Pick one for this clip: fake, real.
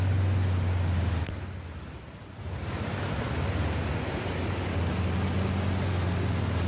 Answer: real